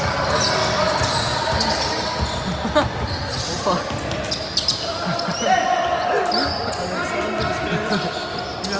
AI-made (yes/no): no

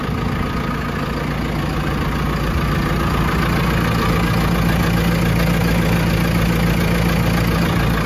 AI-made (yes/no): no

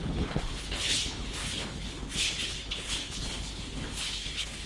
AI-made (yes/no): yes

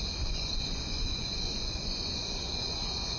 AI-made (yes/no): yes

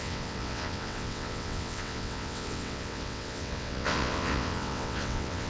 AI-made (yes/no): yes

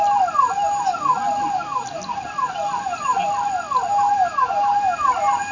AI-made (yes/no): no